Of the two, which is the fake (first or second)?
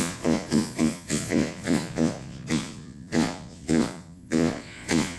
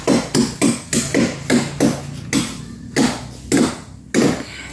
first